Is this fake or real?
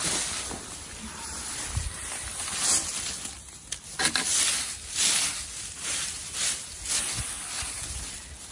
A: real